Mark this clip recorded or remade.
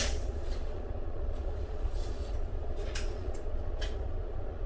remade